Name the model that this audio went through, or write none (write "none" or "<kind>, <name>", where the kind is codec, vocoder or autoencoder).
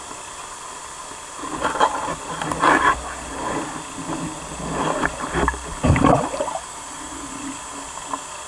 none